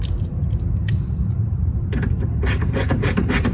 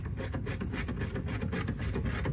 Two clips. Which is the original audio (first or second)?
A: second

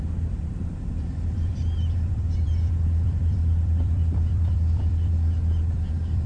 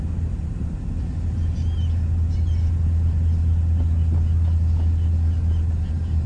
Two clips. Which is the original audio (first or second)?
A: second